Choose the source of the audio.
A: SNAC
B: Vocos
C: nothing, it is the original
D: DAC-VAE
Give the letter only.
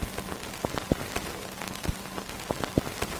C